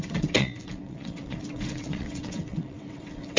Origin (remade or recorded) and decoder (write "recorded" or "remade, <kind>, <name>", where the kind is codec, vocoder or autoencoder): remade, vocoder, WaveNeXt